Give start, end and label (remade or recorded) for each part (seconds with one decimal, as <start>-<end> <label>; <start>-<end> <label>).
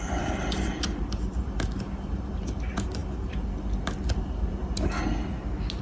0.0-5.8 recorded